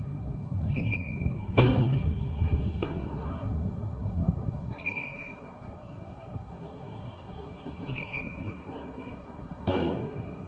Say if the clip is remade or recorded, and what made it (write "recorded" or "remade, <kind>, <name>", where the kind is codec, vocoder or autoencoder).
remade, codec, SNAC